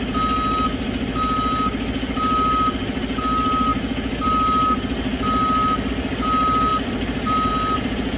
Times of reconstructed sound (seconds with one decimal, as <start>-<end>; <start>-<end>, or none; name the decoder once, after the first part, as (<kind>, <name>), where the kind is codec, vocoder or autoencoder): none